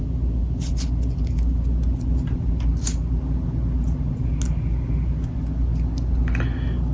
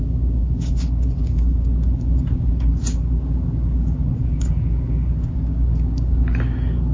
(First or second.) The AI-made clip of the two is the second